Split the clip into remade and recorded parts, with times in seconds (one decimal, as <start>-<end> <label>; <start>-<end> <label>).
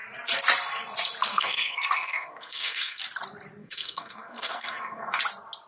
0.0-1.3 recorded; 1.3-3.0 remade; 3.0-3.6 recorded; 3.6-5.2 remade; 5.2-5.7 recorded